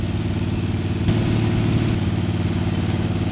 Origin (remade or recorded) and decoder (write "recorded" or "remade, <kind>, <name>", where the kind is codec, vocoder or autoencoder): recorded